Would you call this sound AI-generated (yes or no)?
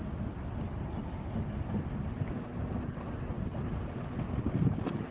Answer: no